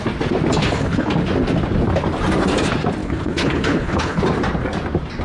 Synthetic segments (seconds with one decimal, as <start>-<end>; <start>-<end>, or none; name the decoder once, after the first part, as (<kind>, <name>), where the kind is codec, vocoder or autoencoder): 0.6-1.1 (codec, HILCodec); 3.0-4.2